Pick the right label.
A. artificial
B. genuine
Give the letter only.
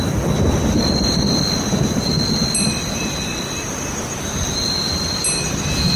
B